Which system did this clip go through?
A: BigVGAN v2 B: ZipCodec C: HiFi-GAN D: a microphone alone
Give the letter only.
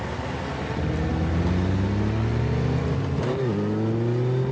D